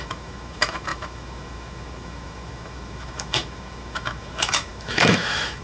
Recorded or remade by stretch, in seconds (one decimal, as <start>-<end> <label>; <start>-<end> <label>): 0.0-5.6 remade